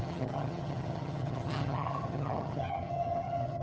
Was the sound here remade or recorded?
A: remade